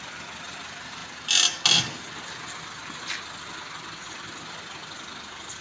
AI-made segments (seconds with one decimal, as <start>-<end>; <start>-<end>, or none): none